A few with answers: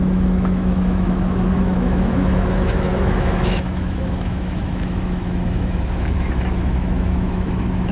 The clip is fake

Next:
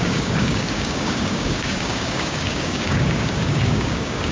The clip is fake